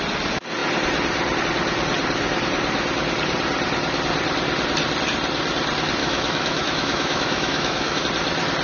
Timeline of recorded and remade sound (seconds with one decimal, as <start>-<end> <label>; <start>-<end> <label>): 0.0-6.0 recorded; 6.0-8.0 remade; 8.0-8.6 recorded